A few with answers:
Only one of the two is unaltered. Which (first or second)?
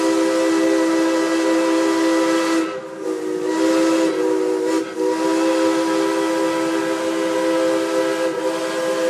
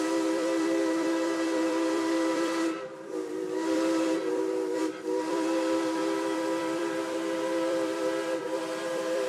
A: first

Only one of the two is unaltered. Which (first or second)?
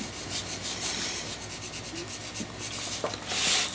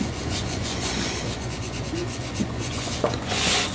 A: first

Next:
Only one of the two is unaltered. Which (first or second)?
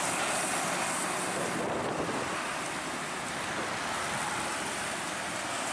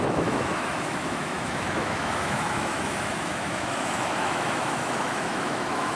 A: first